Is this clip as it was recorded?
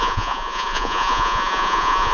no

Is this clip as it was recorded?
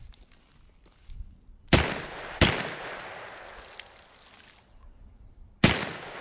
yes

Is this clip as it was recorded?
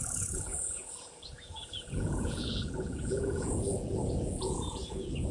no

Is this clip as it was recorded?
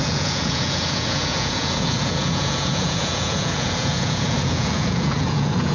no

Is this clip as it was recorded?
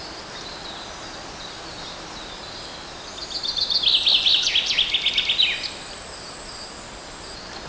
yes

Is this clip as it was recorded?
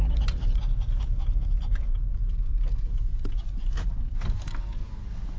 yes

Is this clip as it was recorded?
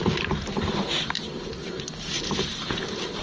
no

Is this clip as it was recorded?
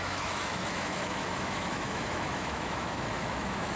no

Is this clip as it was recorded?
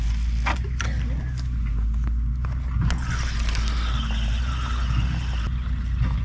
yes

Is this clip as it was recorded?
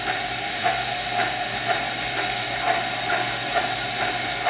yes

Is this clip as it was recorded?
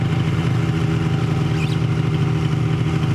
yes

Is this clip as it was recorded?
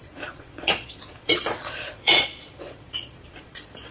no